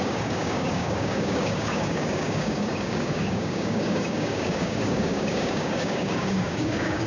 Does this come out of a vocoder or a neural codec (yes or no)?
yes